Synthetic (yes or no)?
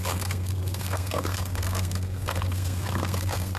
yes